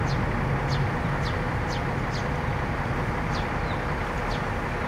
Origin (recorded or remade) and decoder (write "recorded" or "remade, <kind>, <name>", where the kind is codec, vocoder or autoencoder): recorded